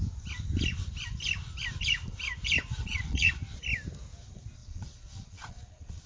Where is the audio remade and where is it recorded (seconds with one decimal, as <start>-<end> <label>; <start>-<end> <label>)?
0.0-2.8 recorded; 2.8-3.3 remade; 3.3-4.6 recorded; 4.6-6.1 remade